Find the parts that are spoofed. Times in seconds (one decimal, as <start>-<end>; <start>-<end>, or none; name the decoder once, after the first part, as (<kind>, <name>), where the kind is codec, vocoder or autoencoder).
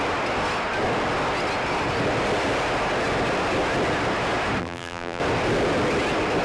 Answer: 4.6-5.2 (vocoder, BigVGAN v2)